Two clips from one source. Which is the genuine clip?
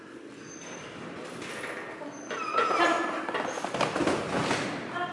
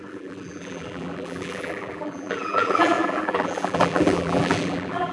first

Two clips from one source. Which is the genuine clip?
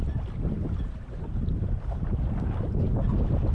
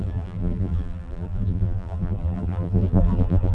first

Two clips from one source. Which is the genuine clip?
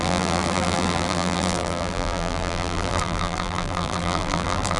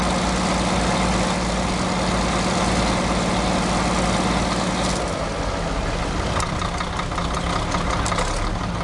second